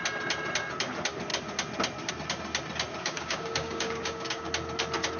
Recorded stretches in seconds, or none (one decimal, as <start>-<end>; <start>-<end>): 0.0-3.0; 4.5-5.2